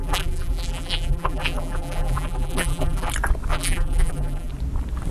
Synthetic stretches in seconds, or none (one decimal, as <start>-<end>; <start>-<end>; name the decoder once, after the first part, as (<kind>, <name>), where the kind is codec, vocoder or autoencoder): 0.0-3.1 (vocoder, BigVGAN v2); 3.5-4.5

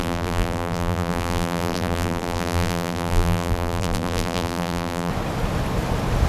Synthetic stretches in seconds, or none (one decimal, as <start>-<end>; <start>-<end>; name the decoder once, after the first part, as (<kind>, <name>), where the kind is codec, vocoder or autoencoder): 0.0-5.1 (vocoder, BigVGAN v2)

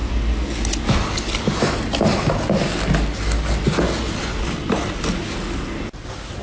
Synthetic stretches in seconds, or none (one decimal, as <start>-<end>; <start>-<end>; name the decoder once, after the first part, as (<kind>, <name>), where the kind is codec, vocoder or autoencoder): 4.6-6.4 (vocoder, BigVGAN v2)

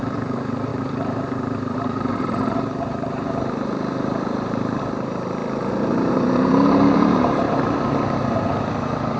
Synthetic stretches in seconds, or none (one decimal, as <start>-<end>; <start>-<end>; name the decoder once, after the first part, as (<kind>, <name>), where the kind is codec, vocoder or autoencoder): 0.0-5.4 (vocoder, BigVGAN v2); 6.1-9.2

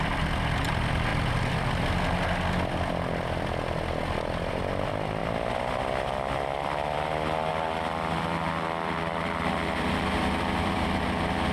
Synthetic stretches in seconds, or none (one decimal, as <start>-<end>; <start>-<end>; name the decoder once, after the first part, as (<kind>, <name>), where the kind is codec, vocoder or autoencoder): 1.1-1.8 (vocoder, BigVGAN v2); 5.2-7.1; 7.5-11.0